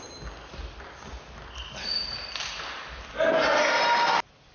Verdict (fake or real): real